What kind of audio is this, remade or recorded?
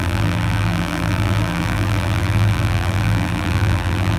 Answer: remade